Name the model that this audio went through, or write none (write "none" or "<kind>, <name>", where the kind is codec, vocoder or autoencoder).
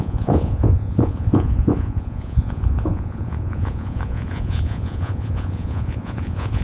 vocoder, Vocos